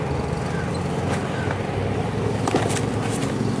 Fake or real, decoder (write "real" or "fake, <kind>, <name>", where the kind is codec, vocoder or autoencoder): real